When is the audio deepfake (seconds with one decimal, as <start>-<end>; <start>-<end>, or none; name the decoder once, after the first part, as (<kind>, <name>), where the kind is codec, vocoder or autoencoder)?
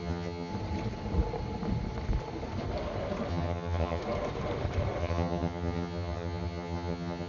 0.0-0.5 (vocoder, HiFi-GAN); 3.3-4.0; 5.0-7.3